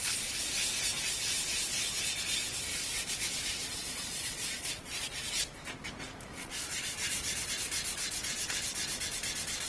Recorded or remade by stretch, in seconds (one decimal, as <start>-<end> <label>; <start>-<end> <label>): 0.0-2.7 recorded; 2.7-5.3 remade; 5.3-6.4 recorded; 6.4-7.5 remade; 7.5-9.7 recorded